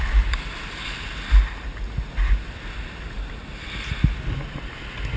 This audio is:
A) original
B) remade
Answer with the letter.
A